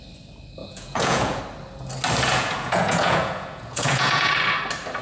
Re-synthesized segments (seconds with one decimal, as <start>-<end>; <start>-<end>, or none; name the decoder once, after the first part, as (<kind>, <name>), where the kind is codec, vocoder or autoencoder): 0.6-1.4 (vocoder, Vocos); 2.3-4.3